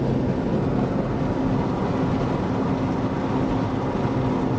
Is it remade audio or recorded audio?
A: recorded